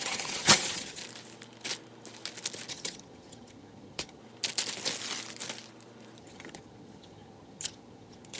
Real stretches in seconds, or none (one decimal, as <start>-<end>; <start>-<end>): 1.0-2.7; 4.2-6.2